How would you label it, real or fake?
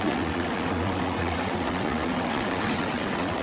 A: fake